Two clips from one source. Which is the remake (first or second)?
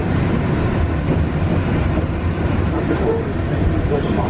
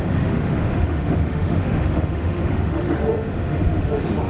second